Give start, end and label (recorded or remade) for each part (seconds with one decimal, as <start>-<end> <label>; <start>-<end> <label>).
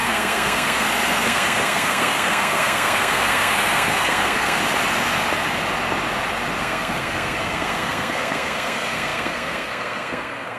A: 0.0-4.6 remade; 4.6-6.6 recorded; 6.6-10.6 remade